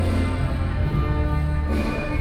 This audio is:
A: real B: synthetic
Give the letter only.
A